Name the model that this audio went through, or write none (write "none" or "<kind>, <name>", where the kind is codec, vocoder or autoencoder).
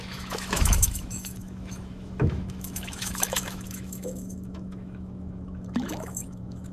autoencoder, DAC-VAE